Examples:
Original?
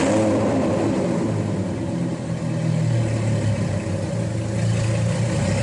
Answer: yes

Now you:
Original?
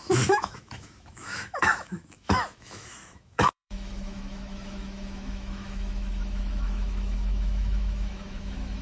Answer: no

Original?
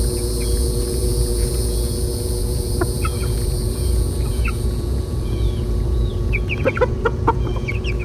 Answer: no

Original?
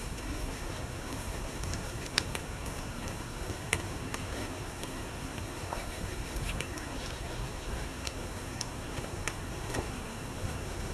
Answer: no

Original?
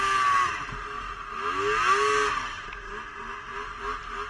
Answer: yes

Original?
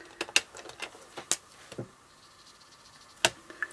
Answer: yes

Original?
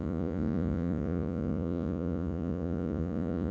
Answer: no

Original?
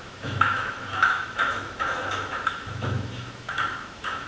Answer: no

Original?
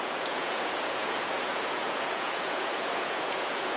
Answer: no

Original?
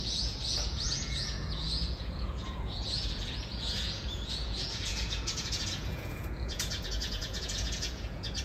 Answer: no